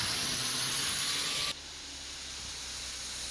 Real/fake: real